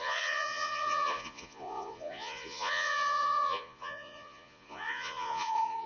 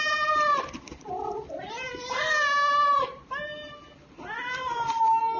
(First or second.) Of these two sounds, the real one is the second